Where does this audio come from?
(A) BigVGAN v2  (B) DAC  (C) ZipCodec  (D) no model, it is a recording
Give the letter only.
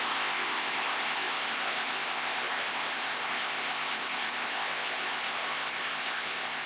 C